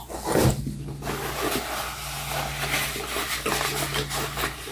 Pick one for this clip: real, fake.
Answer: real